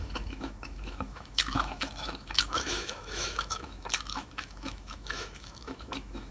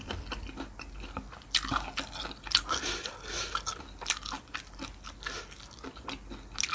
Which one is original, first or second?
second